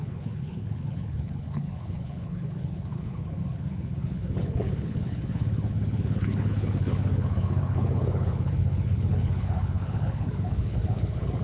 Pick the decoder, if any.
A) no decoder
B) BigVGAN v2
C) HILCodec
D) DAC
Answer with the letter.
C